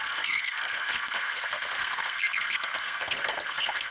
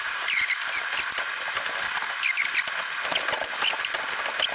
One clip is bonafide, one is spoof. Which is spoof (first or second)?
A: first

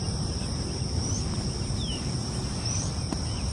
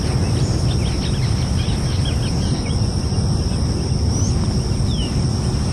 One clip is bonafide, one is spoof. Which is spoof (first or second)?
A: first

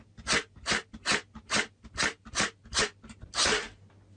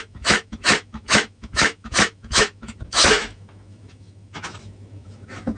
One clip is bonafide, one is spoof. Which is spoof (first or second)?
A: second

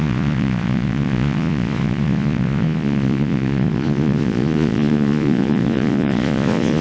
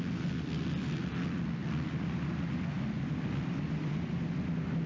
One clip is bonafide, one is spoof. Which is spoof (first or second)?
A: first